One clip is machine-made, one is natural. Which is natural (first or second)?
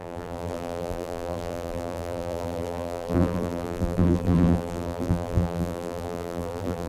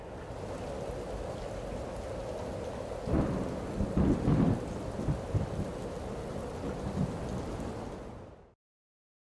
second